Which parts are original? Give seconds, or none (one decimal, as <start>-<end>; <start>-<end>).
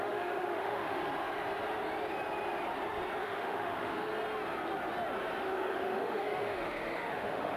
1.0-3.2; 4.1-5.4